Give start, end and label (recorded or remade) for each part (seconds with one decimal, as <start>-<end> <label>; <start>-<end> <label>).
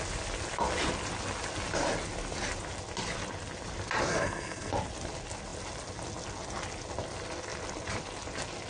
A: 0.0-4.1 recorded; 4.1-4.7 remade; 4.7-8.7 recorded